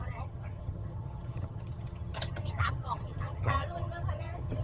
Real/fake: fake